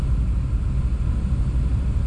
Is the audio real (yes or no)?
yes